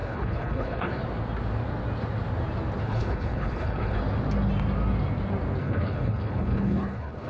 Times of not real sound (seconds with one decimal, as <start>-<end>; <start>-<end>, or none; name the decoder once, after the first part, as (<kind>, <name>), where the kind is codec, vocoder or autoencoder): 0.0-1.0 (codec, HILCodec); 2.8-4.0; 5.6-7.3